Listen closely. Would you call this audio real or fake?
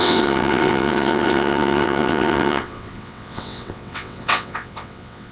fake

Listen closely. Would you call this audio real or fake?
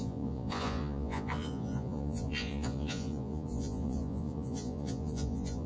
fake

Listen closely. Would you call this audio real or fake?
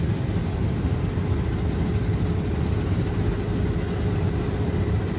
real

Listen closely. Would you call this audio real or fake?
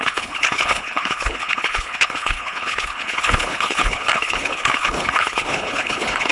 fake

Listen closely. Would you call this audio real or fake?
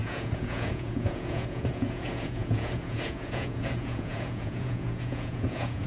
fake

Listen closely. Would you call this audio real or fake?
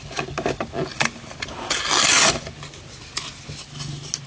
real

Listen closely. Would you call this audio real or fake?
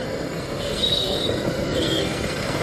fake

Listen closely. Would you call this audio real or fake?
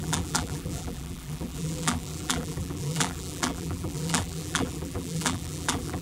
fake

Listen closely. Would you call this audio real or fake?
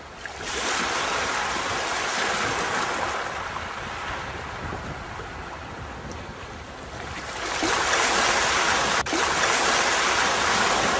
real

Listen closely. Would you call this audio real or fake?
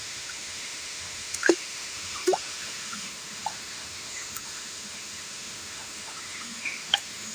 fake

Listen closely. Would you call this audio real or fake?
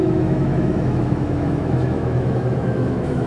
fake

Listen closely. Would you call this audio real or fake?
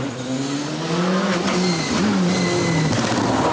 real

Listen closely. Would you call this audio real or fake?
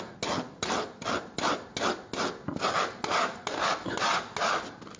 real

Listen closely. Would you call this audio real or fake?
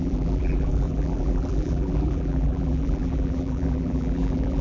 fake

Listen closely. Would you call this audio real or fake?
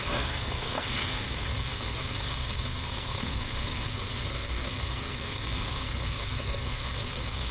fake